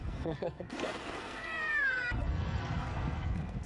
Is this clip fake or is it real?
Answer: fake